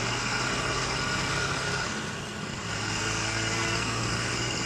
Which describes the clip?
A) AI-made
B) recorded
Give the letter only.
A